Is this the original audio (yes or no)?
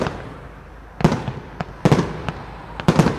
yes